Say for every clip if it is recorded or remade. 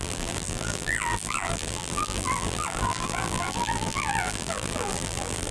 remade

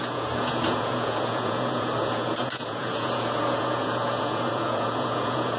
remade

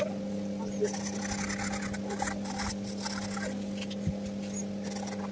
recorded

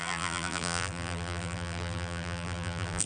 remade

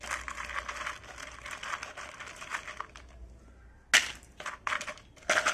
recorded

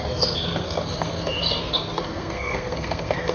remade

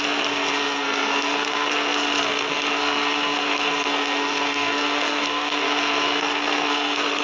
remade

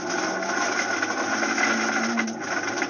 recorded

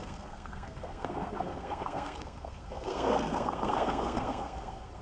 remade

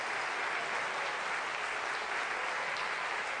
recorded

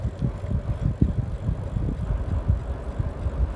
recorded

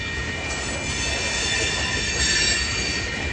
recorded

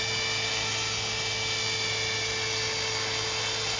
recorded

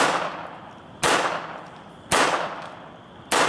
recorded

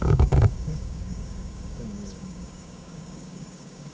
remade